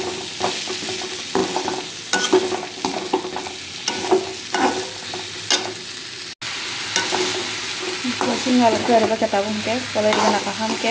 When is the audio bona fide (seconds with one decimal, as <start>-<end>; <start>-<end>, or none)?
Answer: 0.0-10.9